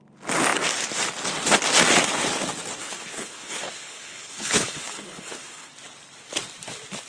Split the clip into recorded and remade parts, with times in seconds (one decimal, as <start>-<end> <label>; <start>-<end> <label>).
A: 0.0-2.8 recorded; 2.8-5.7 remade; 5.7-7.1 recorded